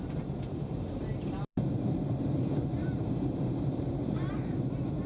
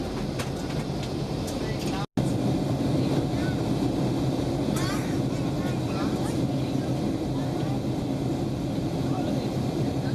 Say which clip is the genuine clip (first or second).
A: second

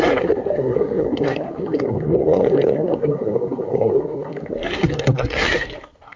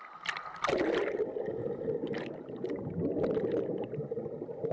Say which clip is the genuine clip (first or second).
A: second